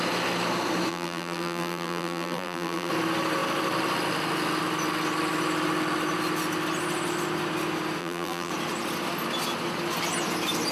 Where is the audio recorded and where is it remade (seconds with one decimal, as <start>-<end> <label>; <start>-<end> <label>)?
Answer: 0.0-0.9 recorded; 0.9-2.9 remade; 2.9-8.0 recorded; 8.0-8.5 remade; 8.5-10.7 recorded